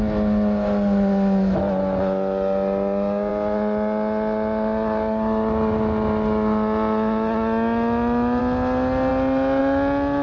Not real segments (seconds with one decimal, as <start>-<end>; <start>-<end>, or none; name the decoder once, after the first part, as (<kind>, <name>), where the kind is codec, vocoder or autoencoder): none